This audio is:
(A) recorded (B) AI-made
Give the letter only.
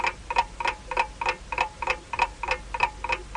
A